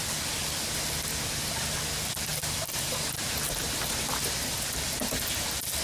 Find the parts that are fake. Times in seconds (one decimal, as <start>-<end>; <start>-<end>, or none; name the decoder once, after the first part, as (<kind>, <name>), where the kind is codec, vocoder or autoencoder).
none